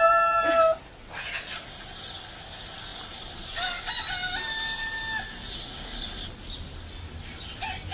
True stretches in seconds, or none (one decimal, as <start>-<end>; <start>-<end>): 0.0-7.9

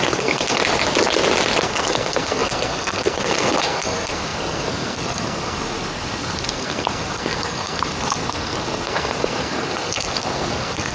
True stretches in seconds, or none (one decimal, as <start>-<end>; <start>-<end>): 0.6-1.6

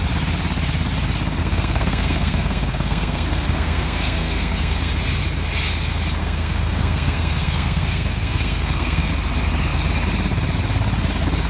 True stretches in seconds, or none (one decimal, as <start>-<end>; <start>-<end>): 0.0-1.4; 4.9-6.2; 9.1-11.5

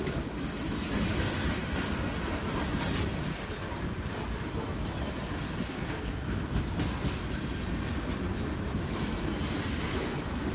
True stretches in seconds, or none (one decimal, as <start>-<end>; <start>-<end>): 0.0-5.8; 6.6-10.5

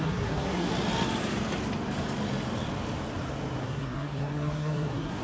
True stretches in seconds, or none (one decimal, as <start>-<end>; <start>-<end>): 0.7-3.6

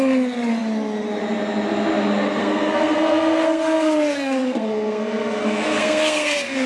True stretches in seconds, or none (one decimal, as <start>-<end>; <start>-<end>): 0.0-2.4

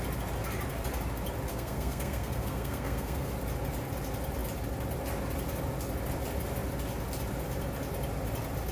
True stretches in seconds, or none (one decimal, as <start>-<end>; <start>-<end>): 0.0-1.5; 3.3-8.7

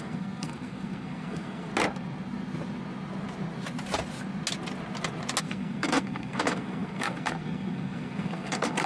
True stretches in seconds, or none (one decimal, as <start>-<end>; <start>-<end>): 1.7-5.4